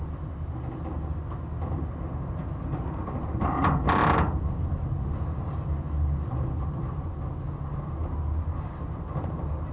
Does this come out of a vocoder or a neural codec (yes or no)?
no